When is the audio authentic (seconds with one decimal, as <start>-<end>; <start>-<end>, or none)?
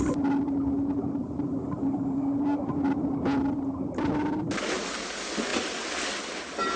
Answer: 0.0-6.8